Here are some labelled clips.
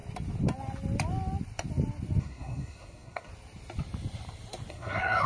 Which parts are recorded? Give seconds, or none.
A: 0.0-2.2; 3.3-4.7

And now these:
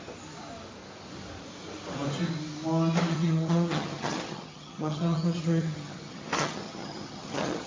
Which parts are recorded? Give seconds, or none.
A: 0.0-3.1

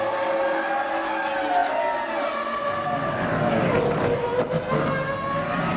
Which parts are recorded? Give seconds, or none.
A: 0.0-5.8